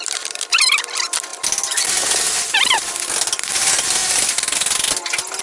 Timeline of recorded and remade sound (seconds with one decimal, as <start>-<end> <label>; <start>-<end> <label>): 0.0-5.4 recorded